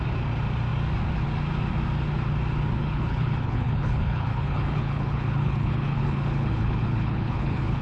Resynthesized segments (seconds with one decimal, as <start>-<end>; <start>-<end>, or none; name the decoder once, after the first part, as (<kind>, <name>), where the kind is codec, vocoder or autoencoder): 2.8-7.8 (codec, HILCodec)